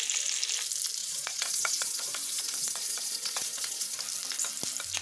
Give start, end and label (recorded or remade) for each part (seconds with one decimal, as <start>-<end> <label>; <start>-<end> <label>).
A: 0.0-1.0 recorded; 1.0-4.0 remade; 4.0-5.0 recorded